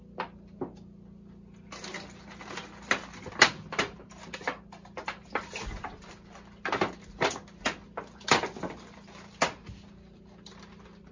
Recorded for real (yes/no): yes